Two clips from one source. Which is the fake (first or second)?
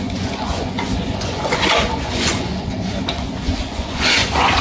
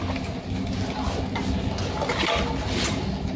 first